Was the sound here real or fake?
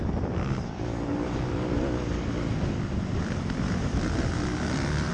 real